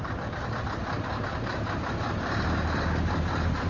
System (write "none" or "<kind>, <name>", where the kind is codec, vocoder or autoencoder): none